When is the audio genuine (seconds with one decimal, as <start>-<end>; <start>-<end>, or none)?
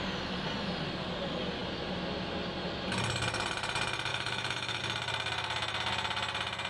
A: 0.0-4.1; 4.8-6.7